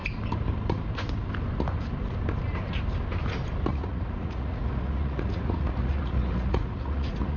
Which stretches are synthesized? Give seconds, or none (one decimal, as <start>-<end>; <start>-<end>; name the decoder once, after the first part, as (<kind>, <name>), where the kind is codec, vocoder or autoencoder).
3.7-7.4 (vocoder, Vocos)